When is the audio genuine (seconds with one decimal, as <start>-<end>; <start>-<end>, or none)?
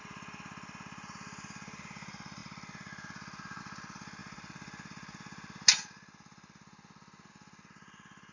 0.0-8.3